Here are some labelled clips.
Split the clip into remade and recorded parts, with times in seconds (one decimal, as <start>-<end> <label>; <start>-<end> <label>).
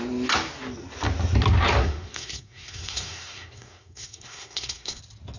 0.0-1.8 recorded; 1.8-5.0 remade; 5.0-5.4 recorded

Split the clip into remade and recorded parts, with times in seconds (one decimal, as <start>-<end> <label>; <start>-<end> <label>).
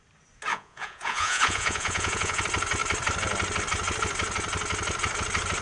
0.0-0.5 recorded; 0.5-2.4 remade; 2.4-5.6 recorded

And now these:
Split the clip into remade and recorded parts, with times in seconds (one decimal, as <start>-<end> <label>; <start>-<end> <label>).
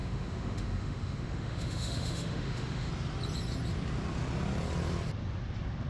0.0-2.9 remade; 2.9-5.9 recorded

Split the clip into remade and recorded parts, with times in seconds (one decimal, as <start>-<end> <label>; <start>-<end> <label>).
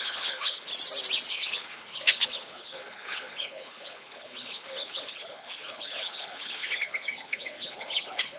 0.0-0.7 remade; 0.7-1.3 recorded; 1.3-8.4 remade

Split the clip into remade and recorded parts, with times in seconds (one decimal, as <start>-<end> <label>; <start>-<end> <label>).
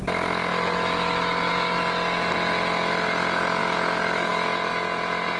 0.0-0.5 recorded; 0.5-1.5 remade; 1.5-3.6 recorded; 3.6-4.3 remade; 4.3-5.4 recorded